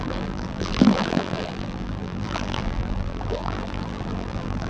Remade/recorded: remade